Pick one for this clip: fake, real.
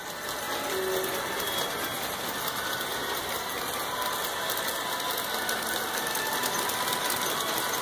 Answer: real